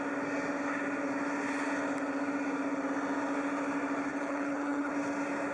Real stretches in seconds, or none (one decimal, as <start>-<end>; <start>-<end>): 0.0-4.1; 4.9-5.5